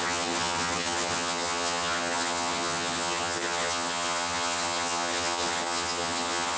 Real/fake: fake